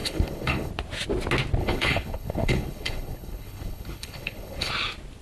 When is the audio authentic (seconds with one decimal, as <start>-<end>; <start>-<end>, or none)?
0.7-1.6; 4.7-5.2